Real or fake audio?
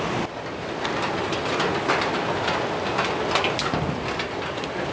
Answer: real